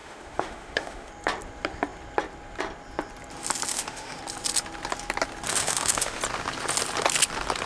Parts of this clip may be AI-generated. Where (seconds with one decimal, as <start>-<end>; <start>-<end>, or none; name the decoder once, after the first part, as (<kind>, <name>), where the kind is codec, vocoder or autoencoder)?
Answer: 0.0-1.1 (autoencoder, DAC-VAE); 3.7-4.2; 5.5-6.2